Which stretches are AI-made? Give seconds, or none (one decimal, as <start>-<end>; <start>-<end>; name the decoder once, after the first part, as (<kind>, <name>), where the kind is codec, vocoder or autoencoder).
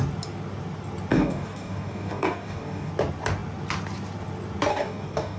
1.1-2.9 (codec, DAC); 4.7-5.4